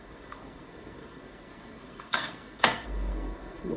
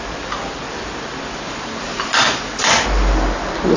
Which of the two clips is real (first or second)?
second